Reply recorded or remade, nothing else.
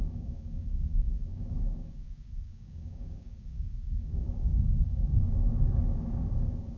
remade